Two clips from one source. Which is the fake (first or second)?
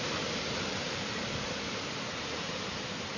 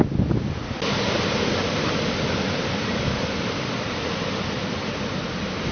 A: first